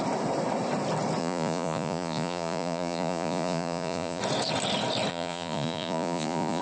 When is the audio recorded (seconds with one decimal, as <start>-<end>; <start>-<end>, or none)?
0.0-1.2; 4.2-5.1